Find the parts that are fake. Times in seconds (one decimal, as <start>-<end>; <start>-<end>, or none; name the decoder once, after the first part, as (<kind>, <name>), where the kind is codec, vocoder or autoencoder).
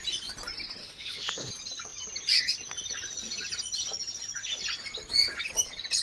0.8-1.5 (autoencoder, DAC-VAE)